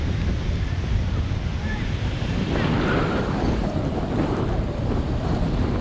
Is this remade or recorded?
recorded